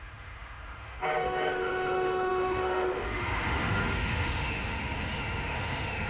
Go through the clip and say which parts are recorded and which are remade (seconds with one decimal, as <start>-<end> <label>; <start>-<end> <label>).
0.0-6.1 remade